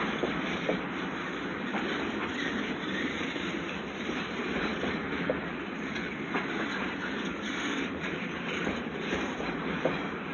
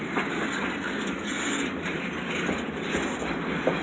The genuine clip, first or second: second